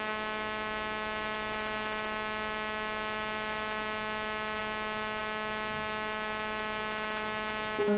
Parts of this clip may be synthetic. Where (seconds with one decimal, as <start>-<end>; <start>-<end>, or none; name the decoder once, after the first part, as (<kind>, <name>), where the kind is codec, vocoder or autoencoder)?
none